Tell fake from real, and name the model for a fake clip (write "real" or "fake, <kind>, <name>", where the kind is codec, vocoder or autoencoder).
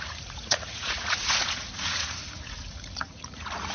fake, vocoder, Vocos